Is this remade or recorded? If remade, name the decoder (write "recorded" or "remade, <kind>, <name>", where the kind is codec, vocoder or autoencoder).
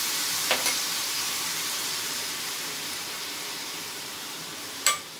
remade, vocoder, BigVGAN v2